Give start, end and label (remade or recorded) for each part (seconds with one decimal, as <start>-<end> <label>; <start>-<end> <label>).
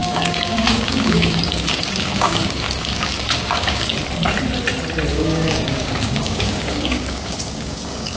0.0-3.9 remade; 3.9-5.1 recorded; 5.1-8.2 remade